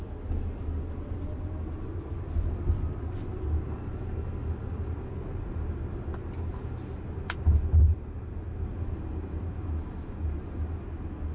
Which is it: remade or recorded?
recorded